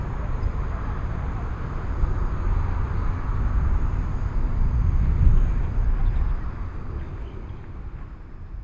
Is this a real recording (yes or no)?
yes